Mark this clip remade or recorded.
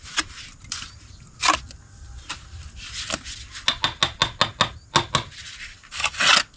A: recorded